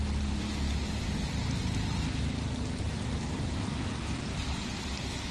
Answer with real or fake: real